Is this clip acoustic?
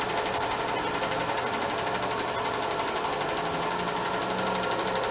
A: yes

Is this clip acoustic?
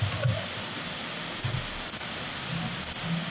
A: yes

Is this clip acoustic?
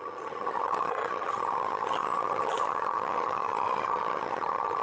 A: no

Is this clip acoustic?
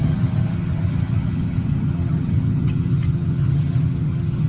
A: no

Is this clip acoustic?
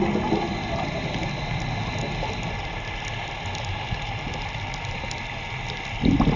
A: yes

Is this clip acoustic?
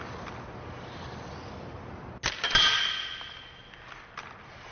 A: yes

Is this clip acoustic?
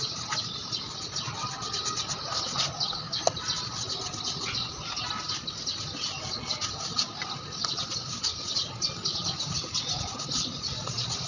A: yes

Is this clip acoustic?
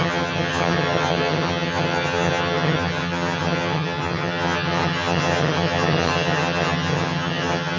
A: no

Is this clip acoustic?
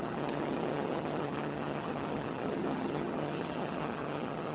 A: no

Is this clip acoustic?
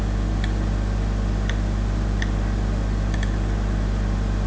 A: yes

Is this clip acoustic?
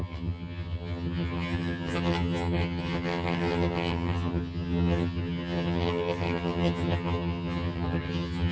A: no